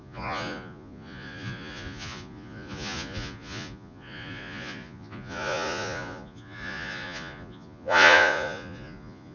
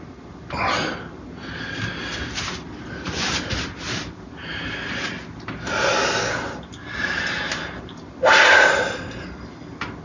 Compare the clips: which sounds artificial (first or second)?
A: first